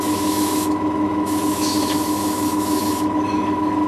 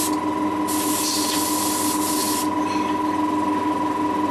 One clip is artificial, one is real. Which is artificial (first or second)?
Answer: first